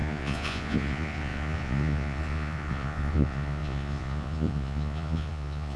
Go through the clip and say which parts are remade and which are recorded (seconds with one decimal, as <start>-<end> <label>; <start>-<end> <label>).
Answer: 0.0-5.8 remade